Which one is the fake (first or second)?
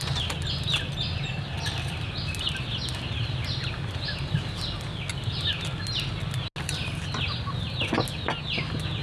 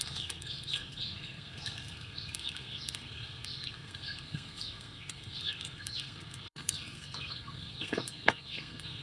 second